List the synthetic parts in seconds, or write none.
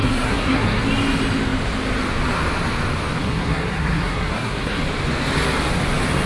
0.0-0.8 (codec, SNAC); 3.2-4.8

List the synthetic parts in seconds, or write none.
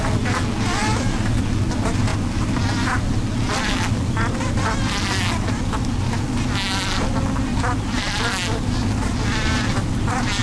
none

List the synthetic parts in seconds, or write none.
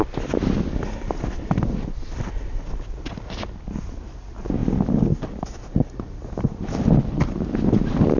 none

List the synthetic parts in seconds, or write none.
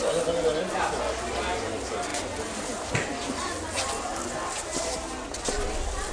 none